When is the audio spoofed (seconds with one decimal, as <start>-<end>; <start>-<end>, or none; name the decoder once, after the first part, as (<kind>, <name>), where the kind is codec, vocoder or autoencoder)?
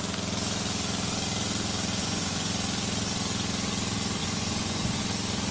2.0-2.5 (vocoder, Vocos); 4.2-5.0